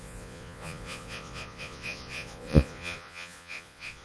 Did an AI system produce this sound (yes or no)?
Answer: yes